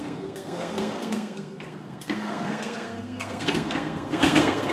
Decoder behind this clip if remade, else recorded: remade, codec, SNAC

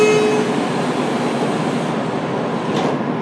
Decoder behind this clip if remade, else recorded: recorded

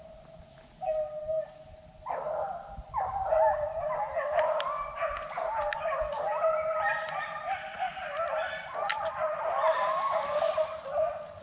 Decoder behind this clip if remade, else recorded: recorded